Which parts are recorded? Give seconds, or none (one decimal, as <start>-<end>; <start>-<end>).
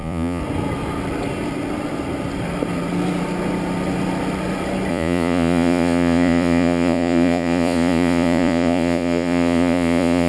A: 0.4-4.9